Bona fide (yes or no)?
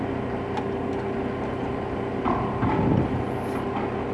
yes